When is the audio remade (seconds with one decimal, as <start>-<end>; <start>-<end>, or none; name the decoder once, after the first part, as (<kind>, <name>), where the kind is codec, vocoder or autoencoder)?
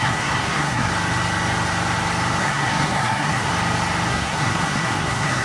0.0-0.9 (codec, SNAC); 2.4-3.5; 4.1-5.4